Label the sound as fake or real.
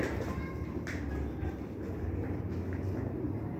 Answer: real